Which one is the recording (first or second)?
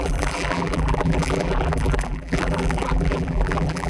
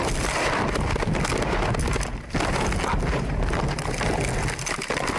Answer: second